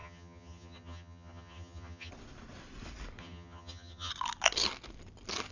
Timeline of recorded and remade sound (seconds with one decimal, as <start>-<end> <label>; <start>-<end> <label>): 0.0-2.1 remade; 2.1-3.2 recorded; 3.2-4.1 remade; 4.1-5.5 recorded